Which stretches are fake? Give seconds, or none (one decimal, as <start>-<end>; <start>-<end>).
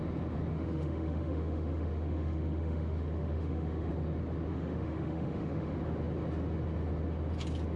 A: 0.5-3.9; 4.5-5.8